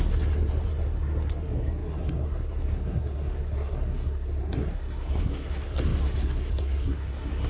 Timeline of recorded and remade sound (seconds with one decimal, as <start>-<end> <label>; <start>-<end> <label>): 0.0-7.5 remade